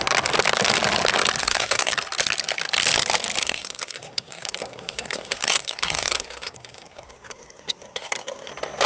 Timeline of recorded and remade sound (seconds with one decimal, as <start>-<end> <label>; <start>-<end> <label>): 0.0-1.4 recorded; 1.4-1.9 remade; 1.9-3.4 recorded; 3.4-8.5 remade; 8.5-8.9 recorded